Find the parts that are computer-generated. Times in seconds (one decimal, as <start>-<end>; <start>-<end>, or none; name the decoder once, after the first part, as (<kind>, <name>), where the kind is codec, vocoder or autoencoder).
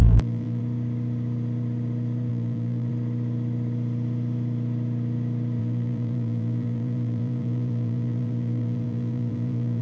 0.0-0.6 (vocoder, BigVGAN v2); 2.3-2.9; 5.6-9.8